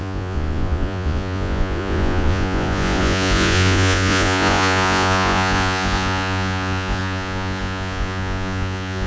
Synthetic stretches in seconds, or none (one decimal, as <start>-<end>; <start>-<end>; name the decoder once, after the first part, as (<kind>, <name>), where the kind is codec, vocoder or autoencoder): 0.0-9.1 (vocoder, Vocos)